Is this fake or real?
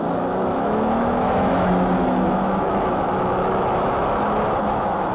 fake